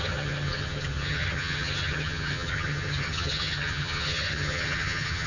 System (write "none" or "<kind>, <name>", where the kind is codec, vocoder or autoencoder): vocoder, HiFi-GAN